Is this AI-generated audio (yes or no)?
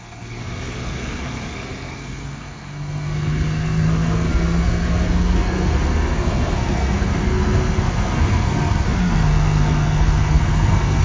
yes